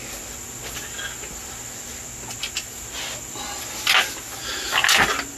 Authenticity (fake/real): real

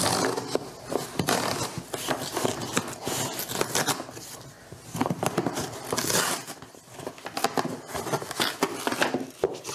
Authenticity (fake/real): real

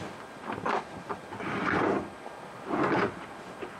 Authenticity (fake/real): real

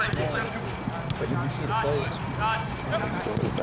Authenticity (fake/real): real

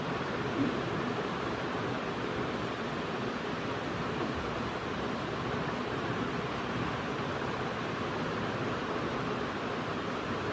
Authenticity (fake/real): fake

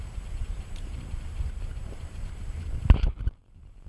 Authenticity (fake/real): fake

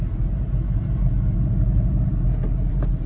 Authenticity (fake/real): fake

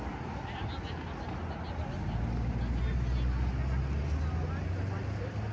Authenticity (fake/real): real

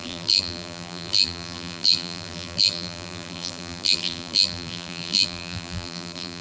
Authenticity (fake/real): fake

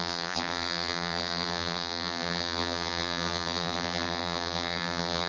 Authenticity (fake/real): fake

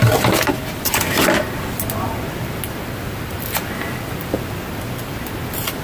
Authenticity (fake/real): real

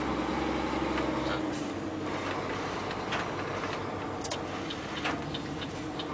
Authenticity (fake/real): real